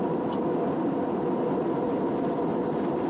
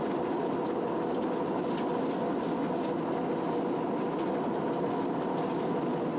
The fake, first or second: first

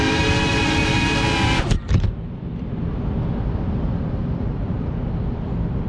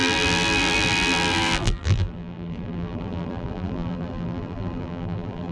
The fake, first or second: second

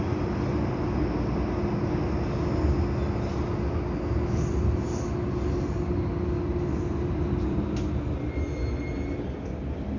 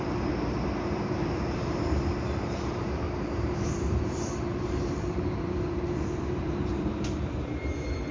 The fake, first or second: second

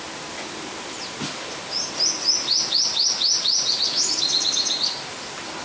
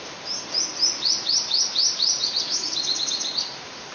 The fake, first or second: second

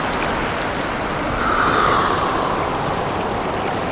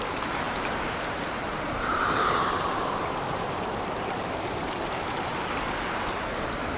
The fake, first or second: second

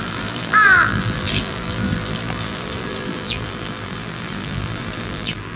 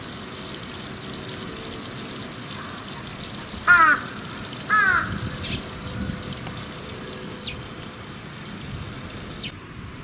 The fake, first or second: first